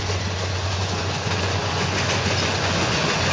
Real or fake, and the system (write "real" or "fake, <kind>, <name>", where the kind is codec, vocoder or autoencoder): fake, vocoder, Vocos